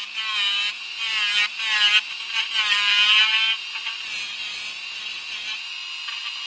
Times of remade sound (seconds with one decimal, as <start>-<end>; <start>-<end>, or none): none